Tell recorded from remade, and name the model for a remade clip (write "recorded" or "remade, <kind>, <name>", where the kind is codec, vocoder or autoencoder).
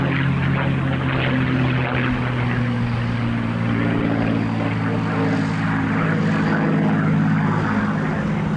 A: recorded